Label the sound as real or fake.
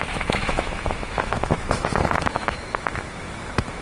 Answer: fake